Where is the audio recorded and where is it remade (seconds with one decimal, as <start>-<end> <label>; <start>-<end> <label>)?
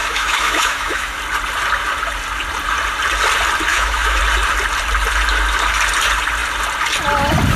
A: 0.0-1.2 remade; 1.2-3.7 recorded; 3.7-4.2 remade; 4.2-7.6 recorded